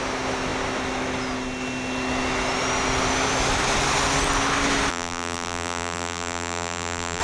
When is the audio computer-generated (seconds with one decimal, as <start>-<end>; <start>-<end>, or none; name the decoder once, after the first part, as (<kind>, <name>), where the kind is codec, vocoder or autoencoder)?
4.9-7.2 (vocoder, BigVGAN v2)